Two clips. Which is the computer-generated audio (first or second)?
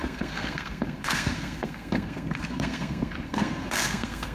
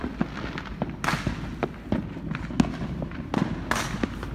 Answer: first